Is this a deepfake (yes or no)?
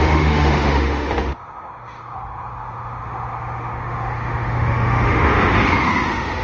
yes